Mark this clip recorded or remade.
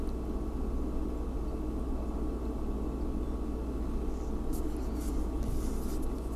recorded